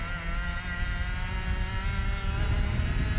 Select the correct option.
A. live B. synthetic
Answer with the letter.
A